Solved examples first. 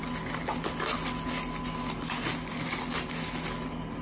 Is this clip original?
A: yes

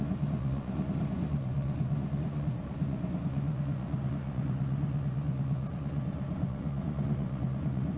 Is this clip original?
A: no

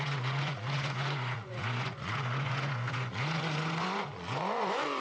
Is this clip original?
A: no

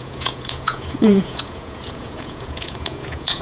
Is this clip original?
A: no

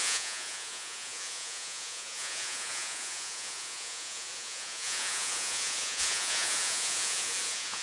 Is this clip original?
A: no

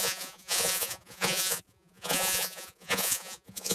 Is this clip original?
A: no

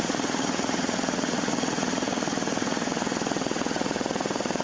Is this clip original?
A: no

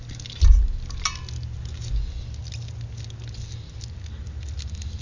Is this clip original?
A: yes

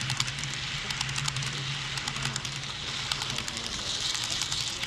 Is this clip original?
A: yes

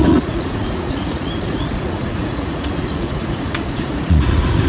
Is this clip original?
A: no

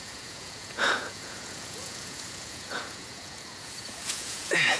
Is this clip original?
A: no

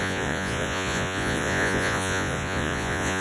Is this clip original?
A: no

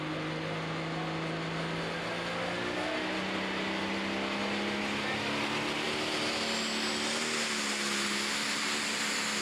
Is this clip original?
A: yes